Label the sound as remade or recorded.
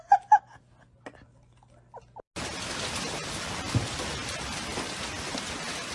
recorded